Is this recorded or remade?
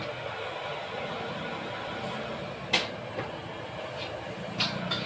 recorded